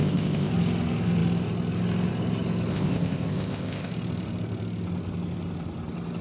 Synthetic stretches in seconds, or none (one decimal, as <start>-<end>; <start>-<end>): 0.0-0.5; 2.7-3.9